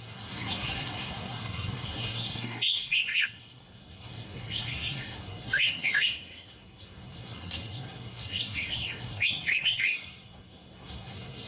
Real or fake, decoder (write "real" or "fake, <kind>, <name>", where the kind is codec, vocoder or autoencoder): fake, codec, SNAC